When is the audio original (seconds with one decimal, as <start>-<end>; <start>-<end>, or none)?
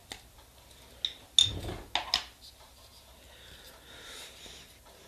0.0-5.1